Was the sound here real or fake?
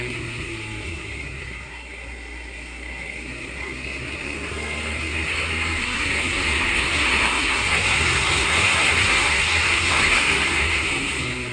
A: fake